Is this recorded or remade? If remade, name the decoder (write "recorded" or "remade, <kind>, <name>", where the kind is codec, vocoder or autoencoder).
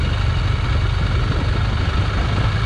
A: recorded